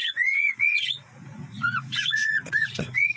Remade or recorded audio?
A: remade